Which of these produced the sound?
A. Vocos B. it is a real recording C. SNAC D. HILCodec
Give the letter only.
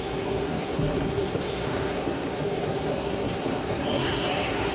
C